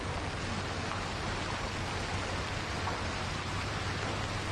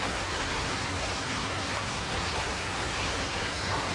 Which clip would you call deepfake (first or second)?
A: second